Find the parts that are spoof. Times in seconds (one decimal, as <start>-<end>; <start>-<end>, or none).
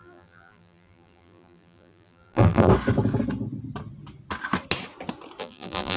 0.0-2.7; 5.4-6.0